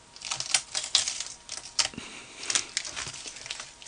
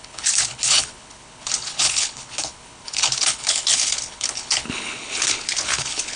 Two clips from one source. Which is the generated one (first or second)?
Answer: second